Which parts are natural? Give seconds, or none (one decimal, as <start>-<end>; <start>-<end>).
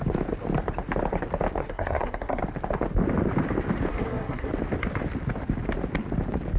0.0-1.6; 2.4-3.9; 4.5-6.6